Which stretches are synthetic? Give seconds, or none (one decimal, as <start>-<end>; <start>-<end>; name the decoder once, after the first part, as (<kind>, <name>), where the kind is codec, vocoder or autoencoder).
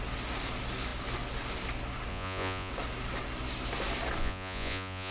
2.1-2.7 (vocoder, Vocos); 4.2-5.1